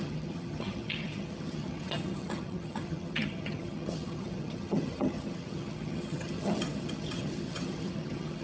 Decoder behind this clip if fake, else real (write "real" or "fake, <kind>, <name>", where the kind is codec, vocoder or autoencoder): fake, vocoder, HiFi-GAN